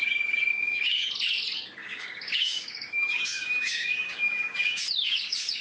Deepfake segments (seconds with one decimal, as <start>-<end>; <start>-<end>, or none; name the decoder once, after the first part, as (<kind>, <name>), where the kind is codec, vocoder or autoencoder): 0.5-1.1 (codec, DAC); 1.8-5.6